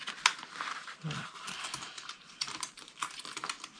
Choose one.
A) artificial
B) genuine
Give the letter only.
B